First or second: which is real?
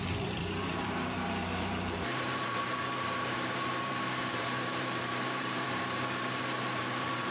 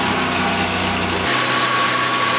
second